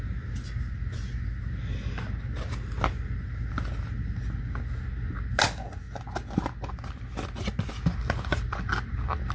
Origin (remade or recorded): recorded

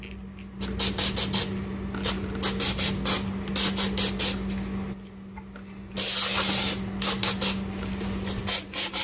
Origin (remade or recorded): recorded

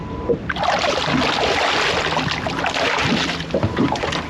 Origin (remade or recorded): recorded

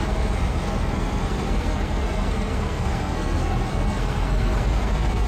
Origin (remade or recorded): remade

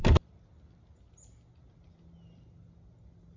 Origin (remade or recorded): recorded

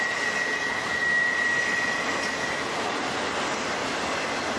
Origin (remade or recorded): recorded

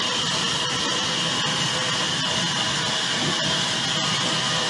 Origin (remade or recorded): recorded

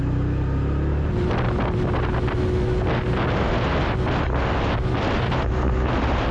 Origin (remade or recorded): recorded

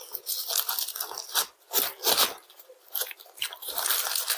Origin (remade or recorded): recorded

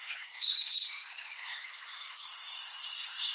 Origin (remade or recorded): remade